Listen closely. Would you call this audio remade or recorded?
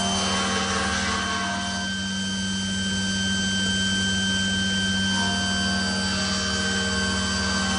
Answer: recorded